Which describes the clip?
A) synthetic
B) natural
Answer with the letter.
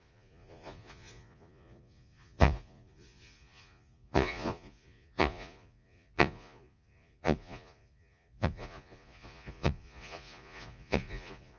A